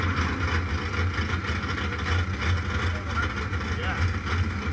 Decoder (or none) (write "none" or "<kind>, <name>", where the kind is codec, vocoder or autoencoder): none